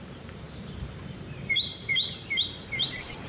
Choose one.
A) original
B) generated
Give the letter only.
B